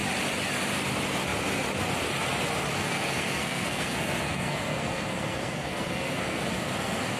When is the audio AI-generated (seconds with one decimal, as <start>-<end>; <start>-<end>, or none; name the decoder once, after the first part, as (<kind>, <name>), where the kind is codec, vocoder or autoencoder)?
2.8-7.2 (codec, SNAC)